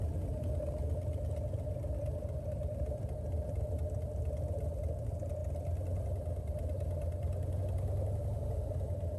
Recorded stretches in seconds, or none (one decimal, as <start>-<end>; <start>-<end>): 0.0-9.2